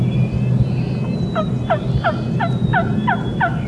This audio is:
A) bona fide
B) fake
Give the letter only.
A